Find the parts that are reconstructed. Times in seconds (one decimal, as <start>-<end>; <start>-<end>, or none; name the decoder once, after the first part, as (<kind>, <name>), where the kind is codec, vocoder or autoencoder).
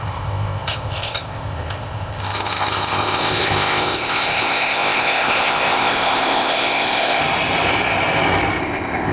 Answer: 0.0-7.2 (codec, ZipCodec); 8.6-9.1